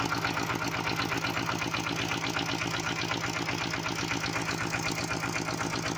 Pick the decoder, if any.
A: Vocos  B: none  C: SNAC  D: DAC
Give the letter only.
B